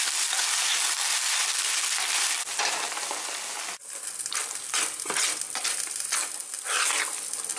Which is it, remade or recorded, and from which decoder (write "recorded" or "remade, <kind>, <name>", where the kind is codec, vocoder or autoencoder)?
recorded